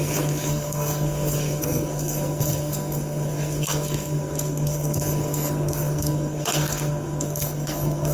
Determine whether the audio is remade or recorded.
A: remade